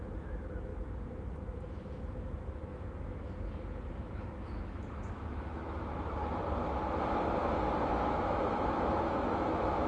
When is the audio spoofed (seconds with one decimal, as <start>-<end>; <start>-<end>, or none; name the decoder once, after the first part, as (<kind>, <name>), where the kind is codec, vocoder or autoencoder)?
0.0-6.2 (autoencoder, DAC-VAE); 8.1-9.9